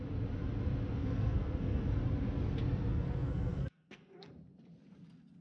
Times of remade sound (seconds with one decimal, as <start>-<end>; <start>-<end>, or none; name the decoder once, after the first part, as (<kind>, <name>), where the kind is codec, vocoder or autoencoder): 1.0-1.9 (codec, SNAC); 2.9-4.3